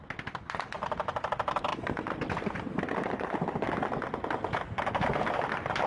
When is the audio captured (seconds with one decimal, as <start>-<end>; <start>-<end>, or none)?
0.0-5.9